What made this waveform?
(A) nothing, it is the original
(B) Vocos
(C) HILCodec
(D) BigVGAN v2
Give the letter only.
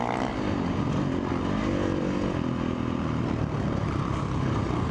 A